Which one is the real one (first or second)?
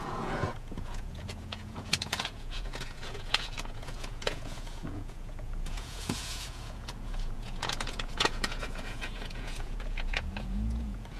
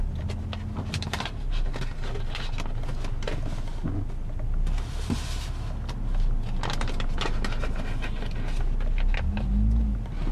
second